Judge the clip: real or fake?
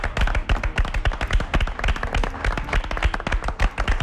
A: real